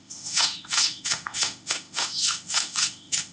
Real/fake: fake